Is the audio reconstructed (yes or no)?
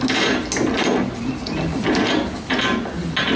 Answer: no